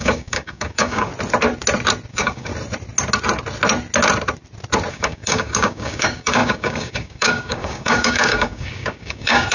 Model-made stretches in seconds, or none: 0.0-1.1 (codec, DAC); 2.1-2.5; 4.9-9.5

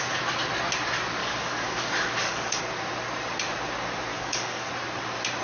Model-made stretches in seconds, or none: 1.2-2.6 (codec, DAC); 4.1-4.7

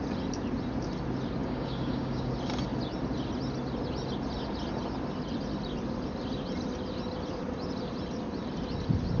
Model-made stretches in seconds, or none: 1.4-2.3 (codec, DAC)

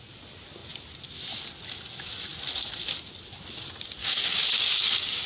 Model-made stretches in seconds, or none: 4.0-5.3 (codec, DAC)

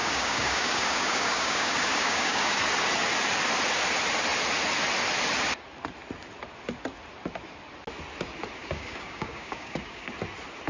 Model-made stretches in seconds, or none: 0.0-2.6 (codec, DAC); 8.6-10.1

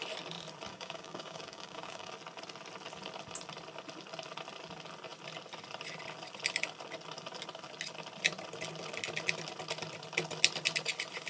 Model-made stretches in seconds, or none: 0.7-2.1 (codec, DAC)

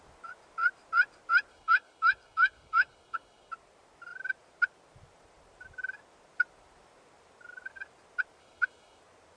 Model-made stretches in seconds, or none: 1.5-3.5 (codec, DAC); 8.4-9.0

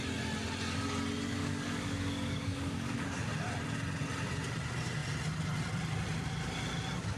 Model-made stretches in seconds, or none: 1.4-3.2 (codec, DAC)